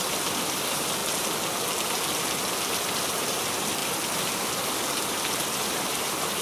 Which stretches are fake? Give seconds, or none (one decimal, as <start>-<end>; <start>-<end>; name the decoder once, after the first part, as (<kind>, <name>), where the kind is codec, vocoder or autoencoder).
0.0-1.0 (vocoder, BigVGAN v2); 2.3-6.4